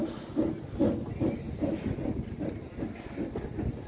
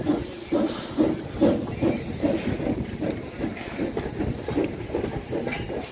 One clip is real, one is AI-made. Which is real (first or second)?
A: first